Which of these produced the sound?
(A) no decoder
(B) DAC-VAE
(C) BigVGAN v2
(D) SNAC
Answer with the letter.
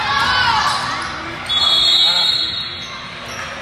A